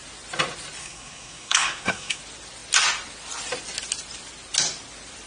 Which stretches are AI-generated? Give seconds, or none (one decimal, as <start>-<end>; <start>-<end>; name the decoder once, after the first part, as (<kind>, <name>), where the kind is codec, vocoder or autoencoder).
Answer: 0.8-2.2 (codec, SNAC)